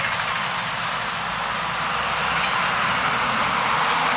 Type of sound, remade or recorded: recorded